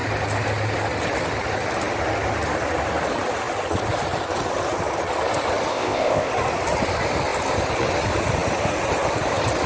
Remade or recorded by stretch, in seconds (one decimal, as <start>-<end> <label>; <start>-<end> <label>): 0.0-5.7 recorded; 5.7-6.3 remade; 6.3-9.7 recorded